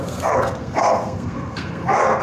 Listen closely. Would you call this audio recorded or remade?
remade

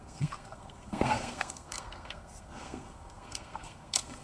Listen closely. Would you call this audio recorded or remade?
remade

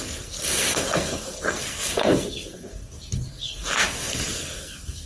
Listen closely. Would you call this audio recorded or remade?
remade